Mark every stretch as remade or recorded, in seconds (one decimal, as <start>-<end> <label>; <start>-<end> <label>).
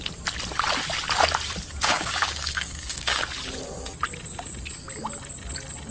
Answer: 0.0-1.8 recorded; 1.8-3.2 remade; 3.2-5.9 recorded